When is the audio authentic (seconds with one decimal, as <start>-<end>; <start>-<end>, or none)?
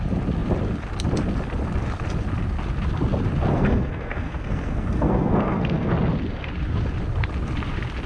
0.0-3.5; 5.9-8.1